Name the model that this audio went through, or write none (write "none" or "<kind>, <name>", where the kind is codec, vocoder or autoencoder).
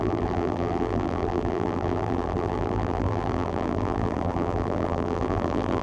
vocoder, BigVGAN v2